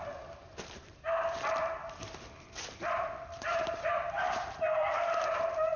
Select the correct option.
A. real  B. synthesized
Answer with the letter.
B